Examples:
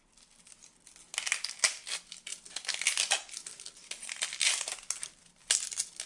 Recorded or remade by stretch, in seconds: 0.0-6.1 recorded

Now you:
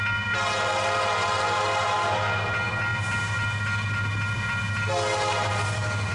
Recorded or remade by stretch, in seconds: 0.0-6.1 recorded